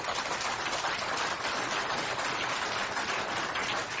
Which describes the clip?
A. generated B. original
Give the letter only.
B